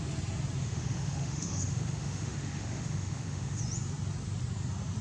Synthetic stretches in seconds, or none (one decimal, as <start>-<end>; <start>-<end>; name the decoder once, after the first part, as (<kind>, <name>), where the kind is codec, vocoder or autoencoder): 0.6-3.6 (autoencoder, DAC-VAE)